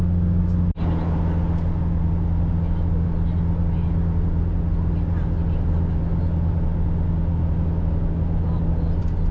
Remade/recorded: recorded